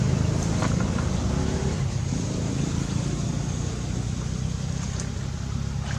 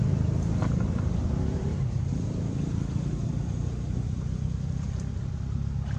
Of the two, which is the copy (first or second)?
second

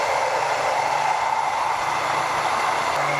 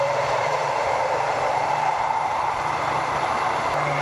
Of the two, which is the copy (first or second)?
second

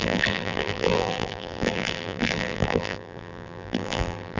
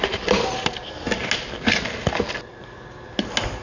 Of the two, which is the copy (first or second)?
first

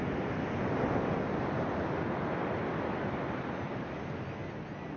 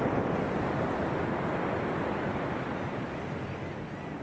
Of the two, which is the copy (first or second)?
second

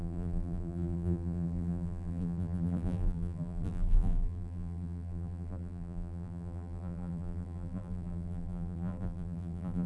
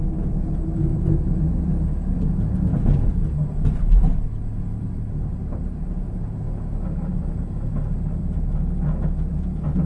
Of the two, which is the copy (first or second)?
first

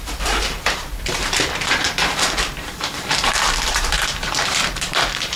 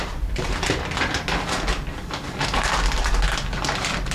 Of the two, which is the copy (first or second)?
first